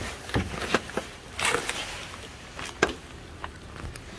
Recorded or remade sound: recorded